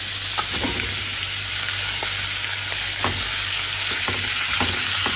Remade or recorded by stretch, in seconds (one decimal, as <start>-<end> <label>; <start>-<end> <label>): 0.0-1.5 recorded; 1.5-2.0 remade; 2.0-2.7 recorded; 2.7-4.0 remade; 4.0-5.2 recorded

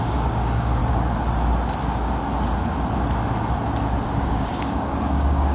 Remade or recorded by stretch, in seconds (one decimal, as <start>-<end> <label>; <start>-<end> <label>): 0.0-0.8 remade; 0.8-4.1 recorded; 4.1-5.5 remade

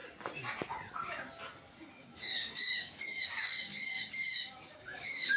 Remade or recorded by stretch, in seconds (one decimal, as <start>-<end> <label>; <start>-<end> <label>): 0.0-2.0 recorded; 2.0-5.4 remade